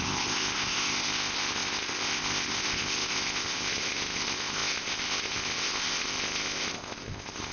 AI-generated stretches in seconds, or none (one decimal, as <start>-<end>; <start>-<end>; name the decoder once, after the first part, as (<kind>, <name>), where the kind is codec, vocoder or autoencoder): 0.0-7.5 (codec, ZipCodec)